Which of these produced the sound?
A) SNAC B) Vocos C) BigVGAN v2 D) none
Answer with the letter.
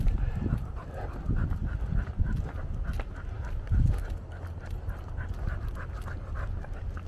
D